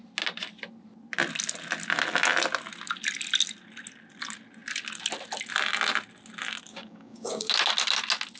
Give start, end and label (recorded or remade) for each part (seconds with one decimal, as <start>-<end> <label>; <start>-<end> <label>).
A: 0.0-6.7 recorded; 6.7-7.5 remade; 7.5-8.4 recorded